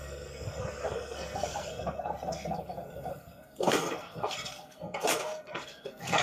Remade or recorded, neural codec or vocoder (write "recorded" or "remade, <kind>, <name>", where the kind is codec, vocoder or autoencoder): remade, codec, SNAC